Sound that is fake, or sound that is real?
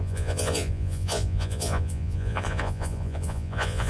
fake